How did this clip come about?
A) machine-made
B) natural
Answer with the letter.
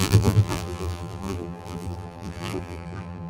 A